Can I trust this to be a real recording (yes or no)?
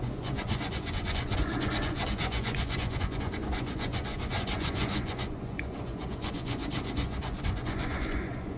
no